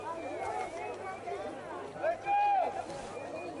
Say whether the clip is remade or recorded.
recorded